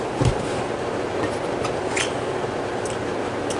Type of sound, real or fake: real